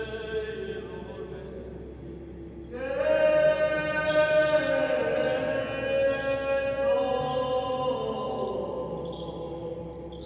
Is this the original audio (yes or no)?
yes